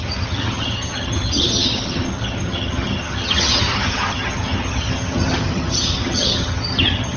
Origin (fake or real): fake